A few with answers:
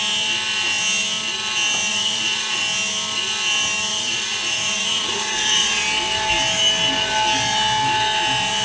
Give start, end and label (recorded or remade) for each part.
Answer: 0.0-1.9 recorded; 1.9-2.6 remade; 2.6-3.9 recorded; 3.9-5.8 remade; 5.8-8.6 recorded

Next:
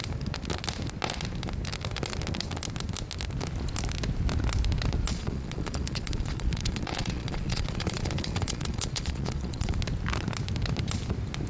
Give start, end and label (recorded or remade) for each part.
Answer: 0.0-5.1 recorded; 5.1-9.8 remade; 9.8-11.5 recorded

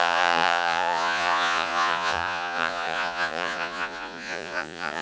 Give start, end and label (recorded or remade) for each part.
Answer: 0.0-5.0 remade

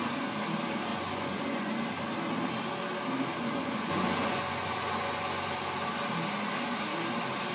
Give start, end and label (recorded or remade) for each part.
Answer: 0.0-0.9 recorded; 0.9-1.7 remade; 1.7-3.4 recorded; 3.4-5.5 remade; 5.5-7.5 recorded

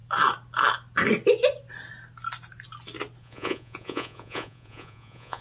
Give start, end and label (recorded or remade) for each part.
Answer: 0.0-3.2 recorded; 3.2-5.4 remade